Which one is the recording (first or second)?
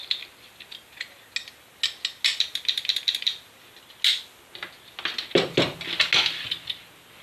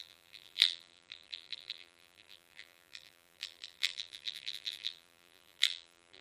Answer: first